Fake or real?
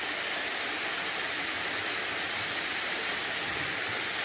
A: real